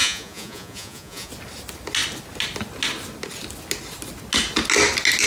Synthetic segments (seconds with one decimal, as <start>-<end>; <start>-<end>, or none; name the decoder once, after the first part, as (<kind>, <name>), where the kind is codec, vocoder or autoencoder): 0.0-1.3 (vocoder, Vocos)